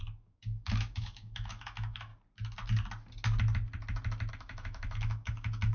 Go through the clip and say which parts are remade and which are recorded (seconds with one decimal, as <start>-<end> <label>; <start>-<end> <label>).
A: 0.0-2.1 remade; 2.1-4.3 recorded; 4.3-5.7 remade

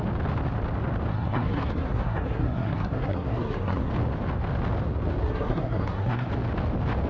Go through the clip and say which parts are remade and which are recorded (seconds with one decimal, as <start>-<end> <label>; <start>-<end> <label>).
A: 0.0-1.1 recorded; 1.1-3.9 remade; 3.9-5.2 recorded; 5.2-6.3 remade; 6.3-7.1 recorded

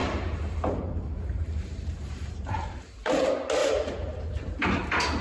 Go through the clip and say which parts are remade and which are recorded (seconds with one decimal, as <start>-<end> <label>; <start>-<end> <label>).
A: 0.0-3.1 remade; 3.1-3.6 recorded; 3.6-4.2 remade; 4.2-5.2 recorded

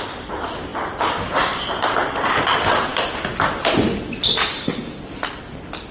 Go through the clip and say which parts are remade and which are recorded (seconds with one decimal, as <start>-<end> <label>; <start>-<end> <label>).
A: 0.0-4.4 recorded; 4.4-5.0 remade; 5.0-5.9 recorded

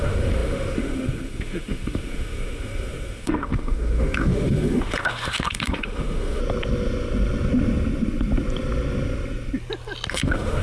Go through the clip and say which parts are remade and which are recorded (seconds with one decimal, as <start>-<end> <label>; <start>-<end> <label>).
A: 0.0-6.4 remade; 6.4-10.1 recorded; 10.1-10.6 remade

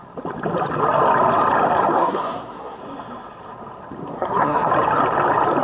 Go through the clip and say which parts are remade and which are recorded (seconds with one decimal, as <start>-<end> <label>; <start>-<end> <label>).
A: 0.0-2.0 recorded; 2.0-2.8 remade; 2.8-4.0 recorded; 4.0-4.7 remade; 4.7-5.6 recorded